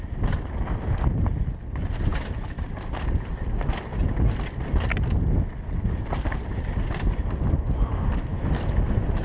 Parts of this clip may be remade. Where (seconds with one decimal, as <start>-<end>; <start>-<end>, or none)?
none